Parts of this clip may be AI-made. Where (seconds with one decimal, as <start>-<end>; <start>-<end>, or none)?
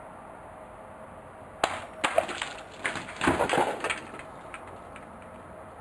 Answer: none